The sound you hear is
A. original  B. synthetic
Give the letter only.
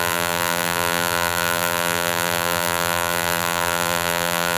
B